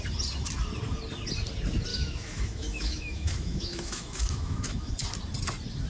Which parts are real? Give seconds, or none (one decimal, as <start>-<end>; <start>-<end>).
0.0-1.9; 4.9-5.9